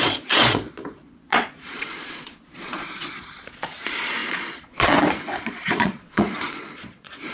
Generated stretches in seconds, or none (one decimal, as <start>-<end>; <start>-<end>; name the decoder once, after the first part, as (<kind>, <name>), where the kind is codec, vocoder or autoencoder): 0.0-7.3 (vocoder, Vocos)